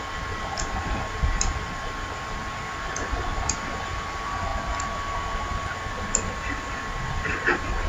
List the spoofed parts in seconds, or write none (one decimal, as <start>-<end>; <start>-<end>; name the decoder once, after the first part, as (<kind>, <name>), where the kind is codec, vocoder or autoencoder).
none